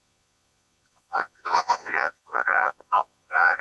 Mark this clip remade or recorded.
remade